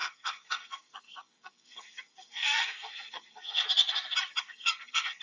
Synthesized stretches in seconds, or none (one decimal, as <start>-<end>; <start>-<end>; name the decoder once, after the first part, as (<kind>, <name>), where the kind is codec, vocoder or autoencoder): 0.0-3.6 (codec, SNAC); 4.4-5.2